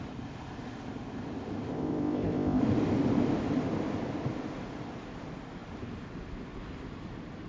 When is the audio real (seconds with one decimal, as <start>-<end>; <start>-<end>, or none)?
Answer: 0.0-1.7; 2.6-7.5